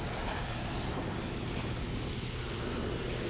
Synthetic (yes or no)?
no